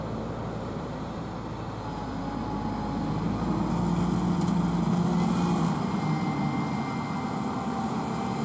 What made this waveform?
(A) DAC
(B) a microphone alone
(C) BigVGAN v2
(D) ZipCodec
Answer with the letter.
B